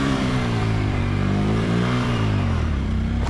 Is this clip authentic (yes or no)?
no